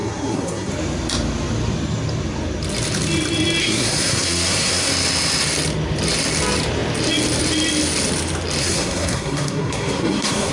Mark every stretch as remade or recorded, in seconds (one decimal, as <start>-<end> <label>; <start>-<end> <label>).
0.0-0.7 remade; 0.7-3.6 recorded; 3.6-4.9 remade; 4.9-8.6 recorded; 8.6-10.5 remade